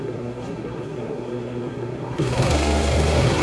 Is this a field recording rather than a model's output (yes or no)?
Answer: no